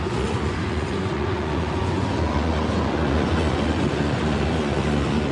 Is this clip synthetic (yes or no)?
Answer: yes